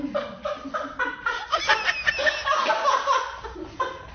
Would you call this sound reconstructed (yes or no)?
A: no